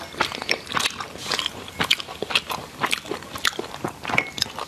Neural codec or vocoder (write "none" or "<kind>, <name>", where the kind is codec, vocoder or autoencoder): none